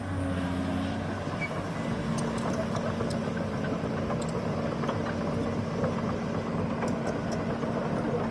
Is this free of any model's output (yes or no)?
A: yes